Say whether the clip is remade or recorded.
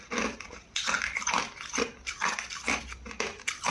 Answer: recorded